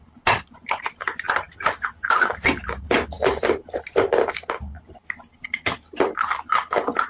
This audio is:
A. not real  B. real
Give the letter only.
B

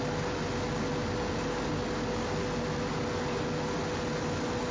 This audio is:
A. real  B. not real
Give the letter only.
A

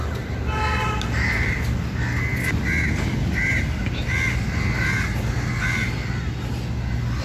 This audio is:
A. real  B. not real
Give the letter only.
A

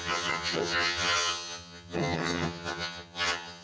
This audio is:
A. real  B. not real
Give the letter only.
B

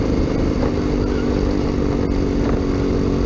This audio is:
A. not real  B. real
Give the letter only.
B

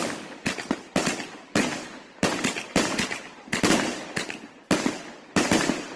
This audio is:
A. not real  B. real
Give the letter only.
B